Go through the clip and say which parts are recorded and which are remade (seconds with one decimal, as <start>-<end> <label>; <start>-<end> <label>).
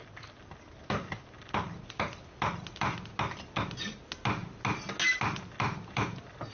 0.0-6.5 recorded